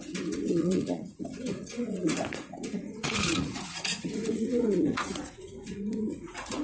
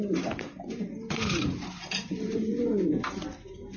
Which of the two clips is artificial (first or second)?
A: first